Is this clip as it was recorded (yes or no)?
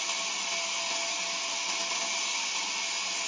yes